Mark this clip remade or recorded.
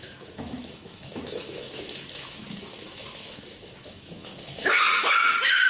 remade